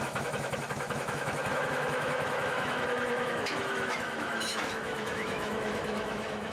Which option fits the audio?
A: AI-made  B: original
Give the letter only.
A